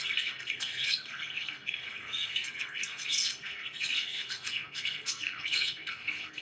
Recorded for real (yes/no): no